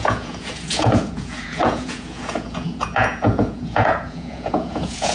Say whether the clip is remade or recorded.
remade